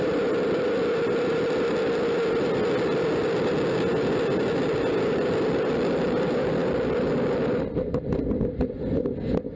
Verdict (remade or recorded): recorded